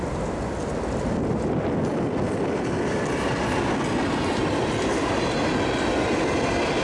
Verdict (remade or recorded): recorded